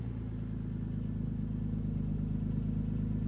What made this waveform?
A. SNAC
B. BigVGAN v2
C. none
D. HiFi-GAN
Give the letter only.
C